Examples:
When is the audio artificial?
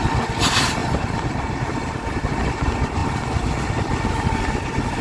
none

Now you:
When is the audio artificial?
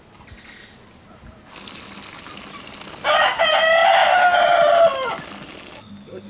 none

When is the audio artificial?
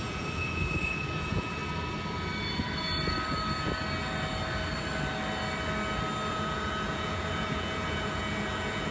0.0-1.6 (vocoder, Vocos); 6.3-8.9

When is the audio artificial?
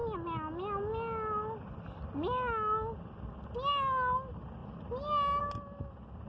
none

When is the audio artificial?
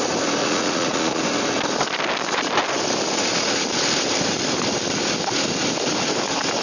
0.4-1.2 (vocoder, Vocos)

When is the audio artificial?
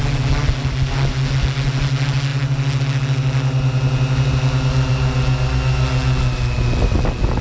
none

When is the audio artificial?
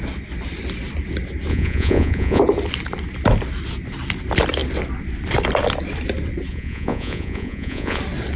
1.5-2.4 (vocoder, Vocos); 6.5-8.0